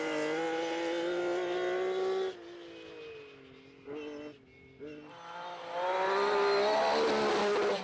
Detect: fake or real real